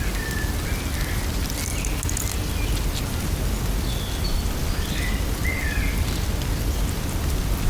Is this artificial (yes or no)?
no